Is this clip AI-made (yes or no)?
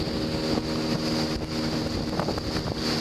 no